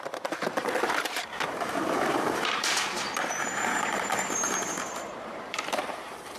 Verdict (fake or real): fake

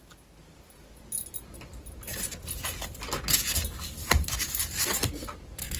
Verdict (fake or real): real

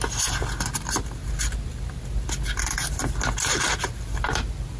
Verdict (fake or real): real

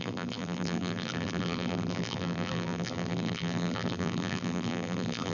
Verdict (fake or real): fake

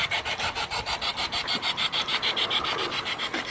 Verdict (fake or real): fake